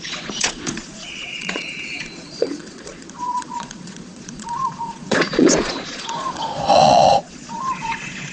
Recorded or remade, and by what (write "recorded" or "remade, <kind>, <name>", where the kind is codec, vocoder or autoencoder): remade, vocoder, Vocos